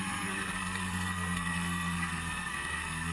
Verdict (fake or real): fake